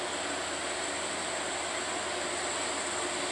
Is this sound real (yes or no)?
yes